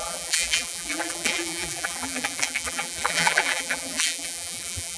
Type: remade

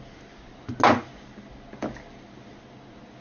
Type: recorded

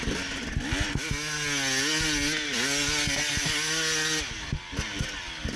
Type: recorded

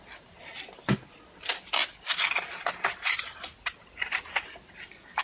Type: recorded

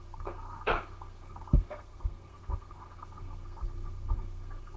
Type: remade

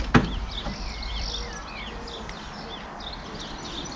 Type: recorded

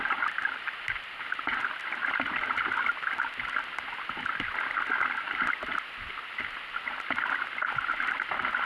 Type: recorded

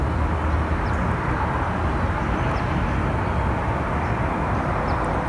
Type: recorded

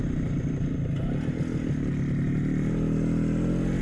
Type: recorded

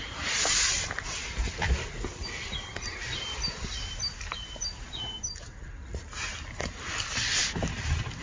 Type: recorded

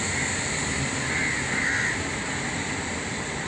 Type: recorded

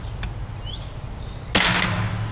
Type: recorded